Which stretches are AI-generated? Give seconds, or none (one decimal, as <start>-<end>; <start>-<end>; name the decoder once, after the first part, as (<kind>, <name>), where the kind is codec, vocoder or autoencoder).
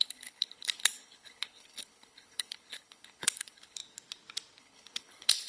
0.0-3.8 (codec, HILCodec); 4.6-5.5